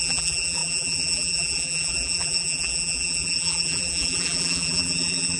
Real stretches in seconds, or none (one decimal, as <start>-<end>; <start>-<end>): none

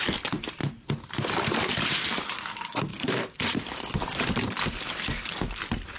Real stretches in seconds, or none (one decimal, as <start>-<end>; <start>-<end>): 0.0-0.6; 2.2-2.9; 4.5-6.0

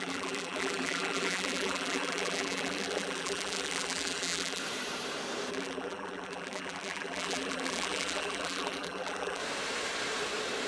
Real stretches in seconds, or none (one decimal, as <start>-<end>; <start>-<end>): 4.6-5.5; 9.4-10.7

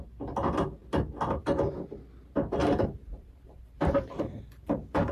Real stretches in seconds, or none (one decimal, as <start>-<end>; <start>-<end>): 0.0-2.6

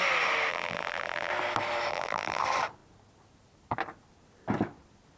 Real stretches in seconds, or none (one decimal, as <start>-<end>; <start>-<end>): 0.0-0.5; 1.3-1.9; 2.4-5.2

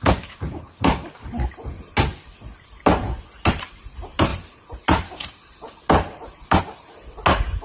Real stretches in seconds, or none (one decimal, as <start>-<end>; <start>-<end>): 0.0-7.6